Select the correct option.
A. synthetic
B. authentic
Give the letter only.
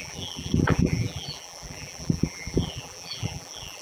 A